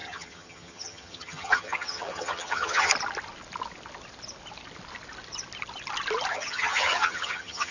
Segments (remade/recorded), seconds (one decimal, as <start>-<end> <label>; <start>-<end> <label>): 0.0-2.9 remade; 2.9-6.3 recorded; 6.3-7.7 remade